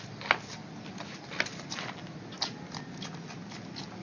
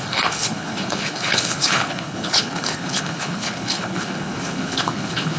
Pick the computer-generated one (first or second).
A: second